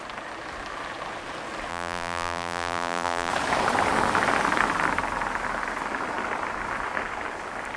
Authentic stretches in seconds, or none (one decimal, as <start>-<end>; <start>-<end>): 0.0-1.7; 3.3-7.8